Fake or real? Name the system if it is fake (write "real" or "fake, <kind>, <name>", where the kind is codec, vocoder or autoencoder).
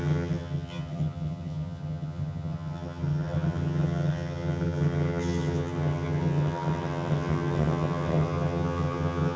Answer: fake, vocoder, HiFi-GAN